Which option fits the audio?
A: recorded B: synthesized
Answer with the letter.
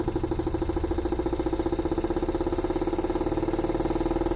A